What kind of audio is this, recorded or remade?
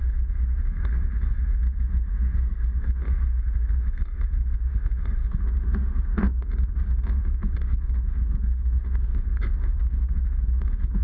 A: remade